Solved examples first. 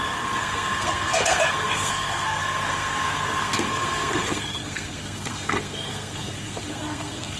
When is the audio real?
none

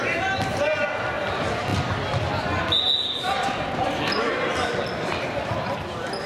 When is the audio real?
0.0-6.3

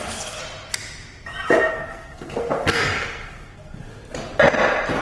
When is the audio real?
0.4-1.7; 3.9-5.0

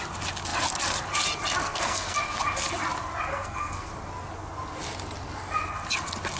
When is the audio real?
0.0-1.6; 2.2-3.3; 3.9-6.4